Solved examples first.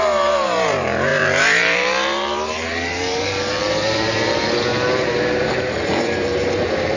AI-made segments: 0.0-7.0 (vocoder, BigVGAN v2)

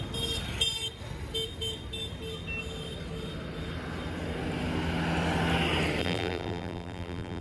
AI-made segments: 6.0-7.4 (vocoder, BigVGAN v2)

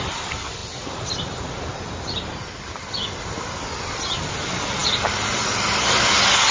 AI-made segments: none

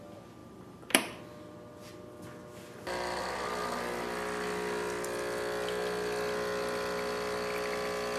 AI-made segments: 0.4-1.2 (vocoder, BigVGAN v2)

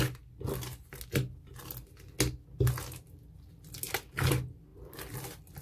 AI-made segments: 4.7-5.6 (vocoder, BigVGAN v2)

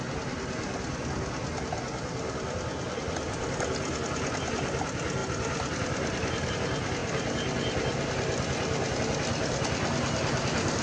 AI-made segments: 5.2-6.5 (vocoder, BigVGAN v2)